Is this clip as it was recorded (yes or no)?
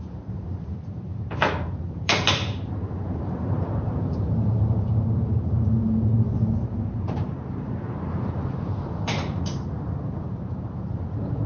no